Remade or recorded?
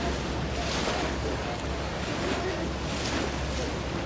recorded